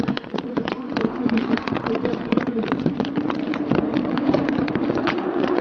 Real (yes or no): no